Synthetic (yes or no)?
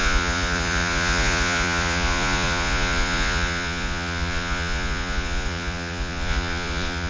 yes